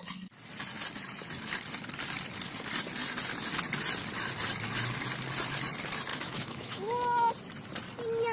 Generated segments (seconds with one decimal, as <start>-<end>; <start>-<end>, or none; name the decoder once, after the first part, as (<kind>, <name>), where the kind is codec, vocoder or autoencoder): 6.1-7.3 (autoencoder, DAC-VAE)